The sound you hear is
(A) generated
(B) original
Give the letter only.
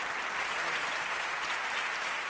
B